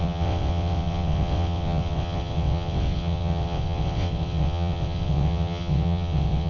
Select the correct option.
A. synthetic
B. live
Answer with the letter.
A